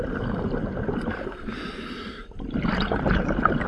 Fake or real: real